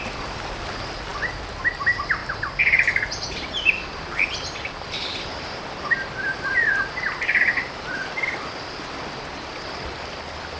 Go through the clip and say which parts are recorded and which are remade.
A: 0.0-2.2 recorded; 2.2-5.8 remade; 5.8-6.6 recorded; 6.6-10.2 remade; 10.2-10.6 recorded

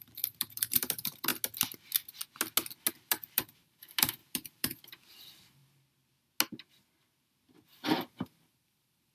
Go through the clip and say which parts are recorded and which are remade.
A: 0.0-1.3 remade; 1.3-2.9 recorded; 2.9-5.6 remade; 5.6-8.1 recorded; 8.1-9.1 remade

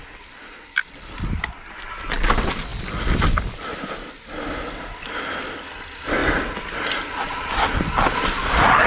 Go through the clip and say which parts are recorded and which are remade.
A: 0.0-0.8 recorded; 0.8-1.9 remade; 1.9-8.9 recorded

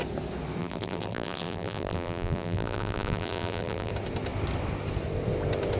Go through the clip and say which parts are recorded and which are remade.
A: 0.0-0.6 recorded; 0.6-3.9 remade; 3.9-5.8 recorded

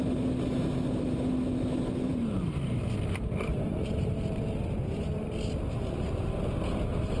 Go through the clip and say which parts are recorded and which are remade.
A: 0.0-2.1 recorded; 2.1-2.8 remade; 2.8-3.5 recorded; 3.5-4.4 remade; 4.4-7.2 recorded

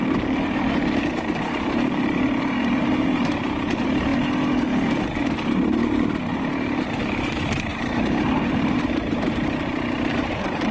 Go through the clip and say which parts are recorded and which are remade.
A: 0.0-4.1 remade; 4.1-5.4 recorded; 5.4-10.7 remade

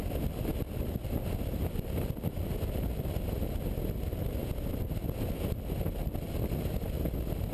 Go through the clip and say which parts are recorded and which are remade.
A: 0.0-7.5 recorded

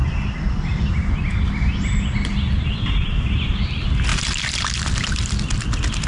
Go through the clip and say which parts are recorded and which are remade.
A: 0.0-6.1 recorded